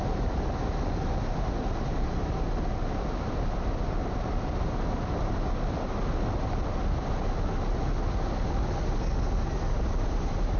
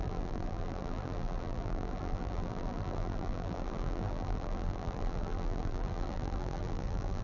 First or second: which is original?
first